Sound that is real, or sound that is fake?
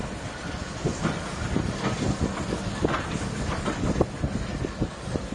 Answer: real